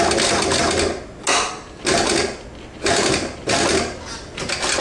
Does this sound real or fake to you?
real